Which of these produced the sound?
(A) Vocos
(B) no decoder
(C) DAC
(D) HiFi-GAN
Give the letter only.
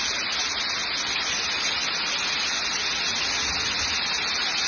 B